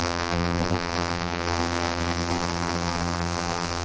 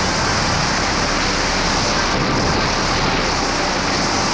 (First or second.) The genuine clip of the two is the second